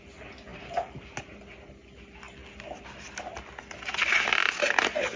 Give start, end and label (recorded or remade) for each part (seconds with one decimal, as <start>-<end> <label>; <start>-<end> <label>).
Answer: 0.0-5.2 recorded